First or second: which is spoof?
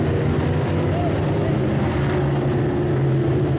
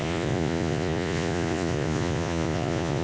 second